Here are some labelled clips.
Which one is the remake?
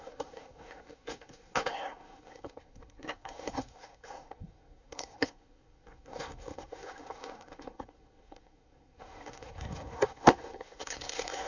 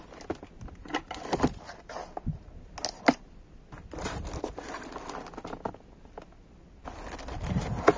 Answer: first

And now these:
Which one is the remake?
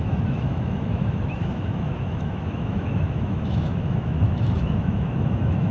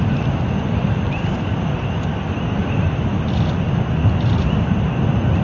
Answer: first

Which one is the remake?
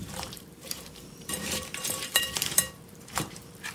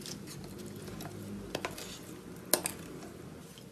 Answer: first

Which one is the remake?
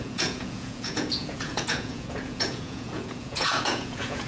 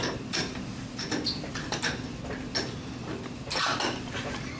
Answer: first